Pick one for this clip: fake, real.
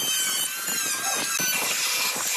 real